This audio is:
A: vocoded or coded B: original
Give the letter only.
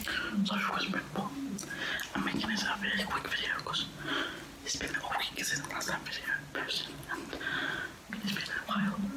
B